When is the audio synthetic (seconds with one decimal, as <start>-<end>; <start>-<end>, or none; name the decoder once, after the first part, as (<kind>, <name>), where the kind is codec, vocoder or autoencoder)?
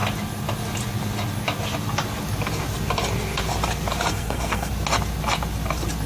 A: 4.1-4.7 (codec, SNAC)